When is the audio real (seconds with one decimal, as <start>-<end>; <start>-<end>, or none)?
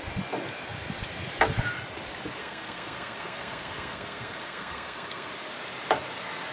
0.0-2.4; 5.3-6.5